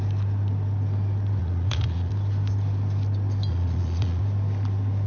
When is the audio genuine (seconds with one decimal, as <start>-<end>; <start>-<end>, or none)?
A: 0.0-1.4; 2.1-3.5; 4.2-5.1